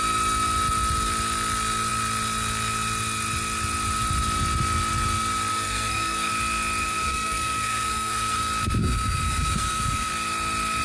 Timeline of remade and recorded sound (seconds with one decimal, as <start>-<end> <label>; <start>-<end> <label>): 0.0-5.5 recorded; 5.5-6.3 remade; 6.3-6.8 recorded; 6.8-8.4 remade; 8.4-8.8 recorded; 8.8-10.1 remade; 10.1-10.8 recorded